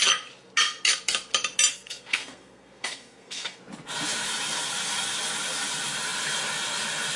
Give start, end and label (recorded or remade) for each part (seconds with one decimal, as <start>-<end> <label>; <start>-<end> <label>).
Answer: 0.0-1.7 recorded; 1.7-3.6 remade; 3.6-7.2 recorded

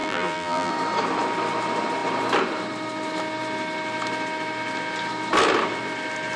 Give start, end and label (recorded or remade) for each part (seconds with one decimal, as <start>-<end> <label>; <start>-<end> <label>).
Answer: 0.0-0.7 remade; 0.7-6.4 recorded

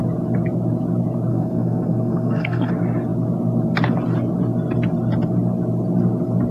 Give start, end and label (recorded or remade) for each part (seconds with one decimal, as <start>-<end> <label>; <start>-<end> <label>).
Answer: 0.0-1.3 recorded; 1.3-2.7 remade; 2.7-6.5 recorded

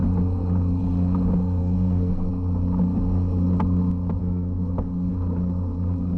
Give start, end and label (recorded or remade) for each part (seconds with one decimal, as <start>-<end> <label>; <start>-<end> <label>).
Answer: 0.0-1.6 recorded; 1.6-2.3 remade; 2.3-4.2 recorded; 4.2-5.1 remade; 5.1-6.2 recorded